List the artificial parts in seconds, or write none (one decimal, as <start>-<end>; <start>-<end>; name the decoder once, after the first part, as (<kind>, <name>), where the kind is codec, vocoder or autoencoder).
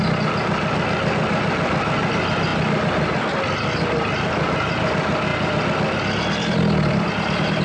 none